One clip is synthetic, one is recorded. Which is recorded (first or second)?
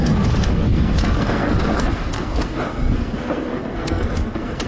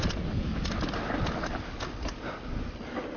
second